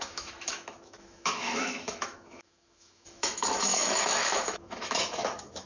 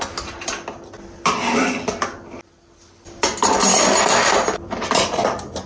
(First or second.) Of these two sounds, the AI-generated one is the first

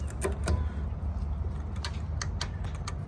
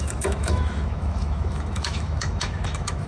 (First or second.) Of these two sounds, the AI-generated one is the second